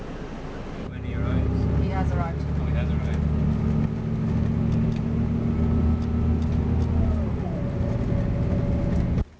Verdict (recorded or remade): recorded